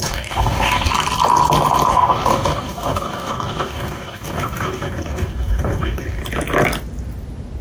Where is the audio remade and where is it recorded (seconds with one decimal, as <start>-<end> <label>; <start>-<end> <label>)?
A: 0.0-0.9 remade; 0.9-1.9 recorded; 1.9-6.2 remade; 6.2-7.6 recorded